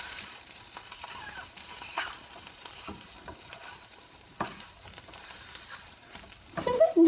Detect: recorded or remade remade